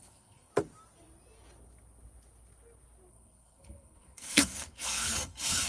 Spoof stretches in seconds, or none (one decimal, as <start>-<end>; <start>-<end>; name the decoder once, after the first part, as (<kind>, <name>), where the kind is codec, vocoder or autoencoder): 0.0-0.5 (codec, SNAC); 3.1-5.7